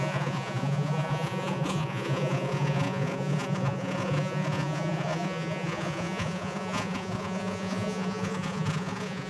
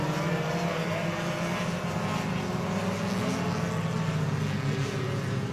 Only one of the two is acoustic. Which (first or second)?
second